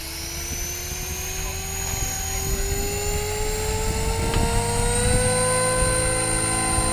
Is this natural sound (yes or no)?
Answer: yes